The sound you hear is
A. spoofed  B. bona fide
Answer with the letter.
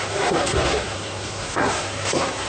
A